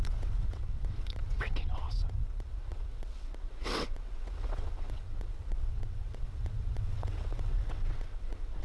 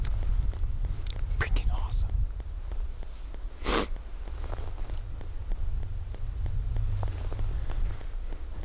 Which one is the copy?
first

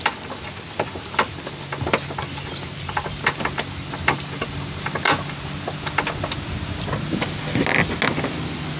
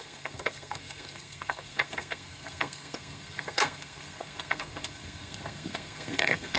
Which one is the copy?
second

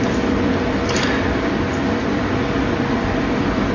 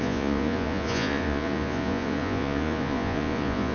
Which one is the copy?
second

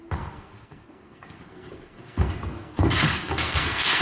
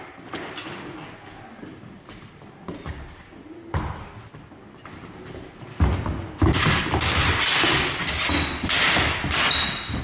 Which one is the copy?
first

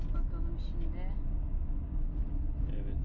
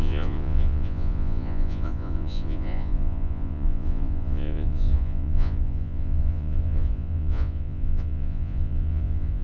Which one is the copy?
second